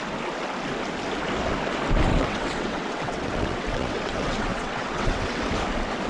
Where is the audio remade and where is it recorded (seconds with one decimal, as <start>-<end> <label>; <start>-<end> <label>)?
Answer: 0.0-2.1 recorded; 2.1-5.4 remade; 5.4-6.1 recorded